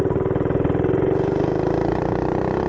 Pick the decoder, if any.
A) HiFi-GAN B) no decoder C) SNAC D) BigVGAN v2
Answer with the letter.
B